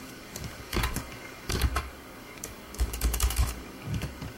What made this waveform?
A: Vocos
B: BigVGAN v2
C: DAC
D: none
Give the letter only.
C